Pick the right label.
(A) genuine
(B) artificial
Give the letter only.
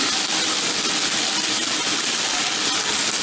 A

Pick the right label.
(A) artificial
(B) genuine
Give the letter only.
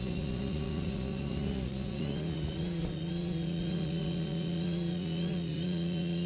A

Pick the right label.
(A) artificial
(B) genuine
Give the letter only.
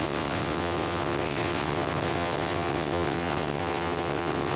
A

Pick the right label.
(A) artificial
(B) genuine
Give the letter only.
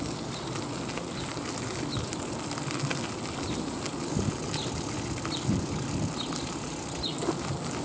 B